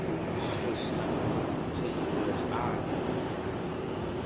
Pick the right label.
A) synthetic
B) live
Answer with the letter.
B